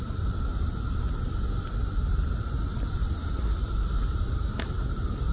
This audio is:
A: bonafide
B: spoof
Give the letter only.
A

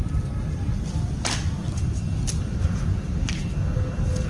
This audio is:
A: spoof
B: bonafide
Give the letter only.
B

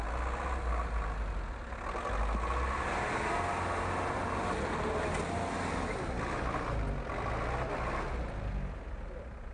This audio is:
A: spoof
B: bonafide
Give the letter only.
B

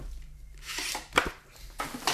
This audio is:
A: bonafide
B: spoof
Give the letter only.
B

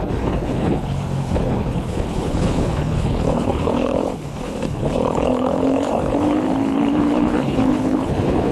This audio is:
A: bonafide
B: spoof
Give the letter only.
B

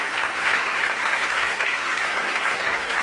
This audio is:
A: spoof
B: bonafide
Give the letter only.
A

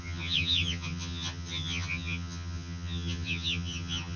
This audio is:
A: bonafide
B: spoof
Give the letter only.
B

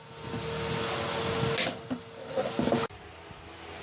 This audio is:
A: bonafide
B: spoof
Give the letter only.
A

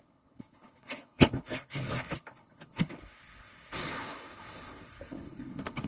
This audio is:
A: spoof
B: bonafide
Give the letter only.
A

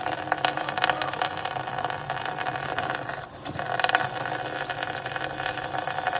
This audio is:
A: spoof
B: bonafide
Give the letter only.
B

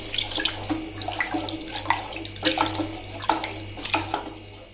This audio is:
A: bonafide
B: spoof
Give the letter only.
A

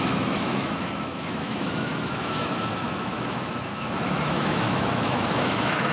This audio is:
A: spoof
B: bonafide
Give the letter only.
A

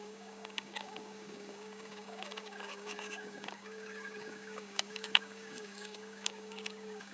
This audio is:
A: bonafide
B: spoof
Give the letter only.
B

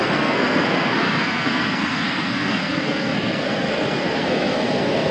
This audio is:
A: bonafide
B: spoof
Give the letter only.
B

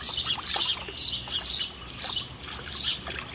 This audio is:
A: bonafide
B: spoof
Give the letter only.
A